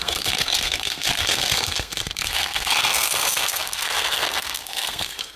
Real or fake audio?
fake